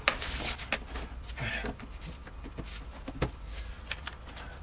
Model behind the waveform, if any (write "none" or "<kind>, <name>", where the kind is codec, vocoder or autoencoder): none